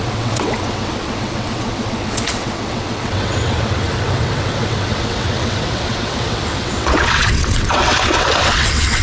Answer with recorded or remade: remade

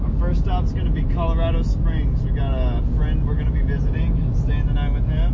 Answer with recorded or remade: recorded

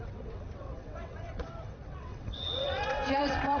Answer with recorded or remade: remade